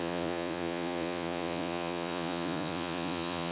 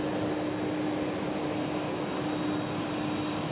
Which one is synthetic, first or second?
first